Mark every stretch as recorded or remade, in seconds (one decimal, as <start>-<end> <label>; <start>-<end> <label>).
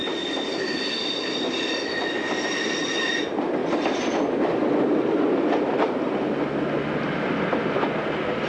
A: 0.0-8.5 recorded